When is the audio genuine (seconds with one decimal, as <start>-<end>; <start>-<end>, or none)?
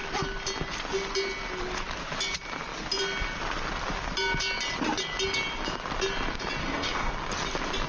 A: 0.0-6.6; 7.1-7.9